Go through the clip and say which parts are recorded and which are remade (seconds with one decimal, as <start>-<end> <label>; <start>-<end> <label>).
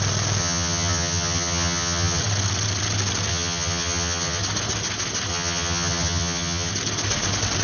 0.0-0.4 recorded; 0.4-2.2 remade; 2.2-3.3 recorded; 3.3-4.4 remade; 4.4-5.3 recorded; 5.3-6.7 remade; 6.7-7.6 recorded